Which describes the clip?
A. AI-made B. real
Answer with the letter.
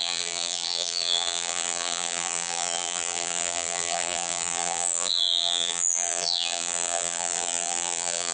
A